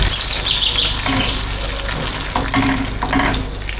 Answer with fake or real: real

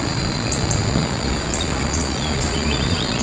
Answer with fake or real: fake